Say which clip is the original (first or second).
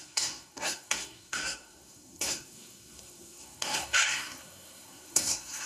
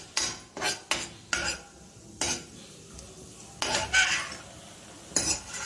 second